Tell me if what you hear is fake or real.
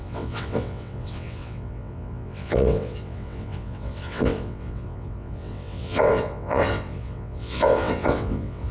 fake